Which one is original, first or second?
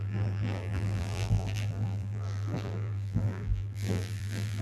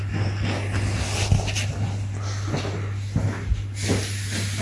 second